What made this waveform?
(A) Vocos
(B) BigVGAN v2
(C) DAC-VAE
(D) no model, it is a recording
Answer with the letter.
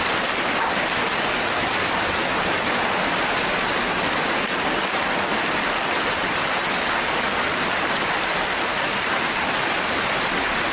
D